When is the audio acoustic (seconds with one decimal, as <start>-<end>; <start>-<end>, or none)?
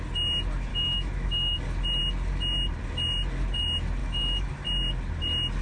0.0-0.7; 1.6-4.0; 4.5-5.6